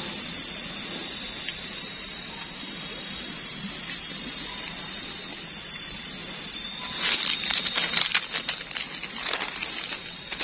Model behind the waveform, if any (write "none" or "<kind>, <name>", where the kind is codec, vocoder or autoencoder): none